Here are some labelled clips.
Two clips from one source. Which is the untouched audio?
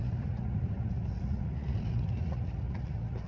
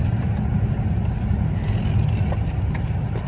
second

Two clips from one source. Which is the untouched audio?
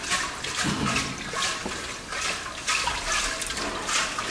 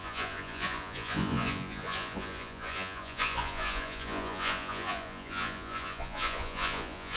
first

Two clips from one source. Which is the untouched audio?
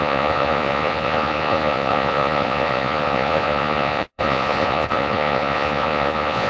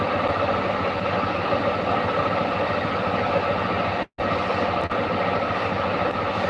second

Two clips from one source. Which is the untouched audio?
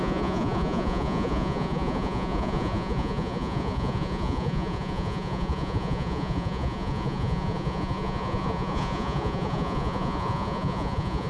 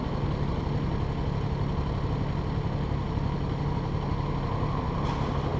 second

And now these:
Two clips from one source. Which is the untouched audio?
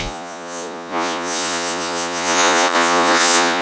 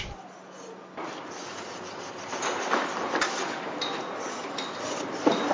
second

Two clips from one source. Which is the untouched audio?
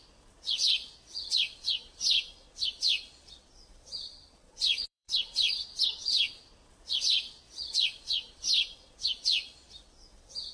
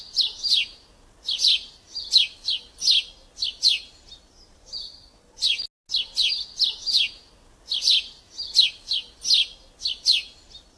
second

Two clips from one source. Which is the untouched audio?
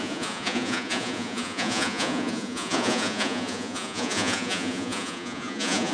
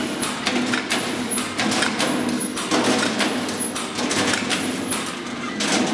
second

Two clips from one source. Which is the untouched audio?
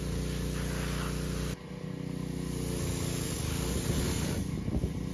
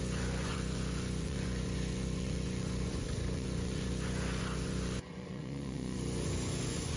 first